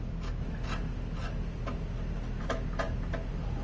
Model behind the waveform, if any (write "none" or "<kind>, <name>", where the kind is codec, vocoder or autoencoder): none